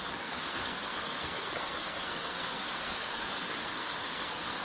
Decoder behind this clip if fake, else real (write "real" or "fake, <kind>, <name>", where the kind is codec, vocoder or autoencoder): fake, codec, SNAC